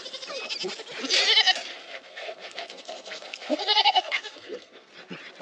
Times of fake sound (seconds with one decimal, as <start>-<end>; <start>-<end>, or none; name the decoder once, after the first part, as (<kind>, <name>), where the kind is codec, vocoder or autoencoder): 1.7-4.9 (codec, SNAC)